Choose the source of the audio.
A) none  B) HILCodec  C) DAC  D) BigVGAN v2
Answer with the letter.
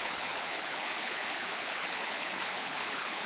B